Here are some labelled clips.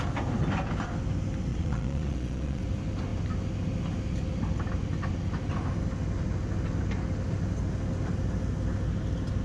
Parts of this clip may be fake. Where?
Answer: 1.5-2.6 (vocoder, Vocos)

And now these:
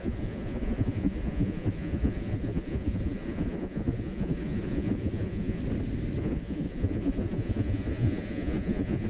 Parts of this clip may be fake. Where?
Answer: 0.0-5.6 (vocoder, Vocos); 6.2-9.1

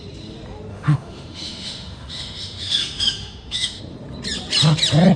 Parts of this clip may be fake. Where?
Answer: 0.7-3.8 (autoencoder, DAC-VAE)